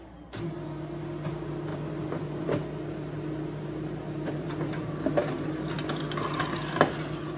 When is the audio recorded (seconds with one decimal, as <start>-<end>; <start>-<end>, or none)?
0.0-7.4